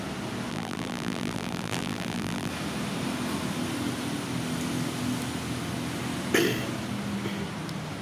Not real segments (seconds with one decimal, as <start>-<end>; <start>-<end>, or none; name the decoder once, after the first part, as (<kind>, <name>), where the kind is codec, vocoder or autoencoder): 0.5-2.5 (vocoder, BigVGAN v2)